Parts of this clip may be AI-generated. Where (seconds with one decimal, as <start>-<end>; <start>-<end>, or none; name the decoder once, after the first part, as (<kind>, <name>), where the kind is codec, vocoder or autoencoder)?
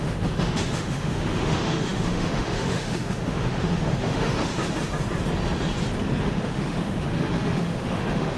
0.0-4.5 (autoencoder, DAC-VAE); 6.2-8.4